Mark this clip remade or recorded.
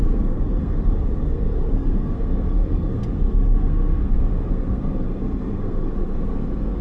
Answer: remade